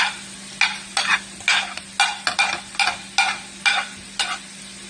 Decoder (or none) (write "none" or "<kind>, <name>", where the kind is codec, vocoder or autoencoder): none